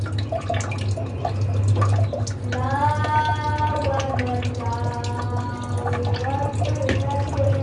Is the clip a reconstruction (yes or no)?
no